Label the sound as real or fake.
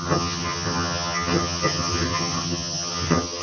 fake